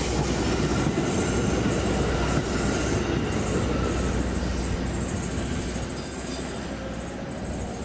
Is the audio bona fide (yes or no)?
yes